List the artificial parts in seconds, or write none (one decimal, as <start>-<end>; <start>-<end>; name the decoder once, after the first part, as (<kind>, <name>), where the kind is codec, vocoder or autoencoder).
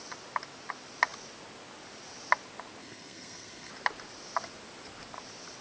2.8-3.7 (codec, SNAC)